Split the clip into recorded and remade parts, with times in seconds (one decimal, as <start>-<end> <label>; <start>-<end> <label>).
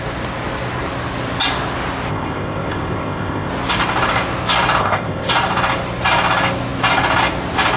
0.0-2.1 recorded; 2.1-3.5 remade; 3.5-4.8 recorded; 4.8-5.3 remade; 5.3-7.8 recorded